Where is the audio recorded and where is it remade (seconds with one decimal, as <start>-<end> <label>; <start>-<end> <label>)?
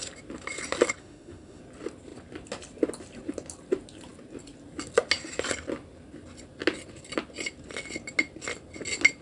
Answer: 0.0-1.0 recorded; 1.0-1.6 remade; 1.6-9.2 recorded